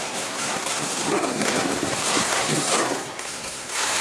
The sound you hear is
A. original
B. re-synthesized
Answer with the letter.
B